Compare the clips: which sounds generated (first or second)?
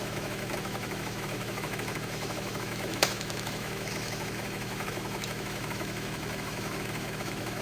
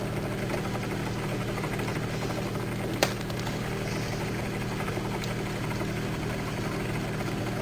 first